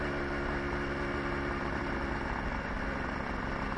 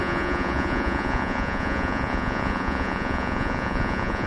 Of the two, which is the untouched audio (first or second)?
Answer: first